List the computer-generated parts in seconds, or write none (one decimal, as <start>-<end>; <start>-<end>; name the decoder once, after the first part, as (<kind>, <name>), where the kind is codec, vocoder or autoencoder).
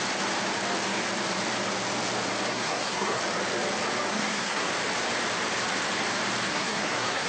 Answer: 2.5-3.2 (codec, SNAC); 4.1-4.7; 6.5-7.3